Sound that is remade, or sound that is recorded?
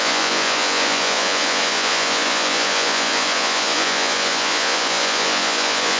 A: remade